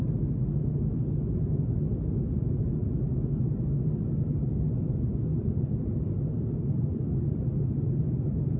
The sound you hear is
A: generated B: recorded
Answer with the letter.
B